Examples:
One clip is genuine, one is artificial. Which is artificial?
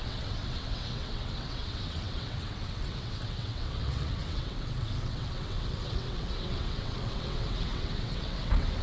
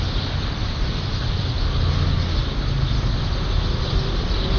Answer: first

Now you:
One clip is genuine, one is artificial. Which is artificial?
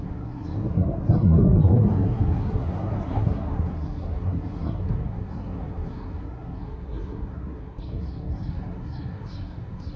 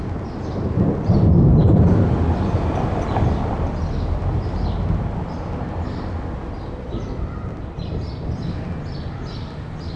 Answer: first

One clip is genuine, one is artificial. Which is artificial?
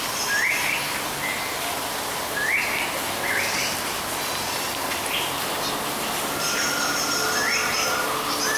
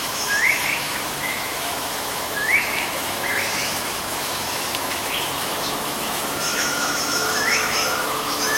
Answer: second